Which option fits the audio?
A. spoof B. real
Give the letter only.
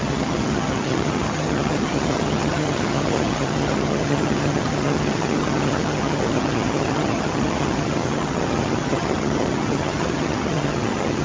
A